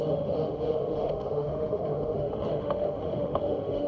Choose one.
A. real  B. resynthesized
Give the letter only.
B